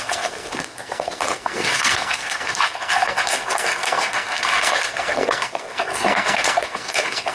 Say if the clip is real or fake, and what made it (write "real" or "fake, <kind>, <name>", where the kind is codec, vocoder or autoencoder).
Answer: fake, codec, SNAC